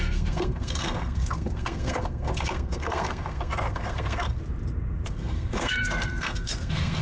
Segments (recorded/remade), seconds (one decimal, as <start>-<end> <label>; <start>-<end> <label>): 0.0-4.4 remade; 4.4-5.1 recorded; 5.1-7.0 remade